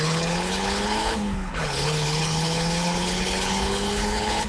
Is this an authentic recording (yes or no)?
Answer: no